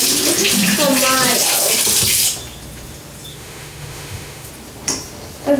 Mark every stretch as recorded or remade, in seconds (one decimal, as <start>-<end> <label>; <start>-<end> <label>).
0.0-3.3 recorded; 3.3-4.5 remade; 4.5-5.6 recorded